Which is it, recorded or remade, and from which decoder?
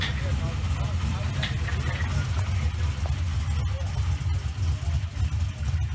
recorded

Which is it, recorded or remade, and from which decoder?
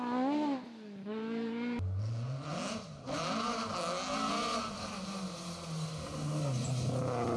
recorded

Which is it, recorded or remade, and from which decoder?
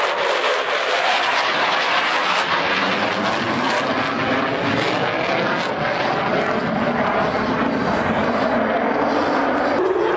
recorded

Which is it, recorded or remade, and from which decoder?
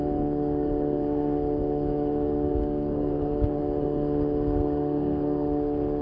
remade, codec, SNAC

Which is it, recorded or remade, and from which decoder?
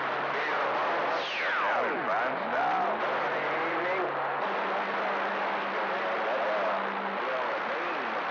recorded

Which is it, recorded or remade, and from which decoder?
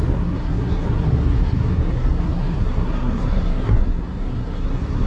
remade, codec, SNAC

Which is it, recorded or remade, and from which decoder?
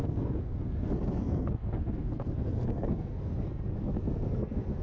remade, codec, SNAC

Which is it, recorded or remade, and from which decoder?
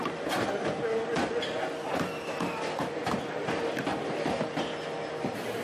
recorded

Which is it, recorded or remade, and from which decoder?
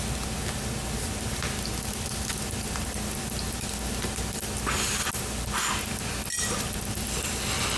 recorded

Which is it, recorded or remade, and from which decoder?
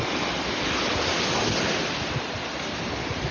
recorded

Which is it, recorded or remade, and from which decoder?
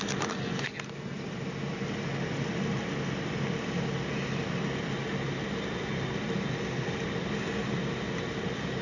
recorded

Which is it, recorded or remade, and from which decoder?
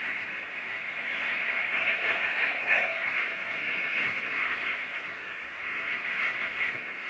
remade, codec, SNAC